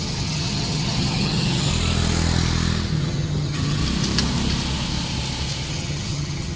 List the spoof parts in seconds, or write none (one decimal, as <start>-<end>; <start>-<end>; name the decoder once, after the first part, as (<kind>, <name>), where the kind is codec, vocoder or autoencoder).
0.0-1.7 (vocoder, HiFi-GAN); 3.0-3.8; 5.7-6.6